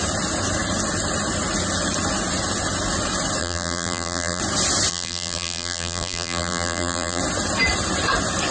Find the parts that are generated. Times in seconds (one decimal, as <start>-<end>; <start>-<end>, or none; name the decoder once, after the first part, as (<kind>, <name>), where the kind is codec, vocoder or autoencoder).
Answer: 3.4-4.4 (vocoder, BigVGAN v2); 4.9-7.2